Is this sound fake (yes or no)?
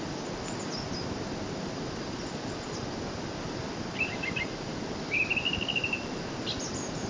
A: no